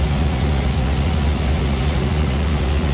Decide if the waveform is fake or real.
fake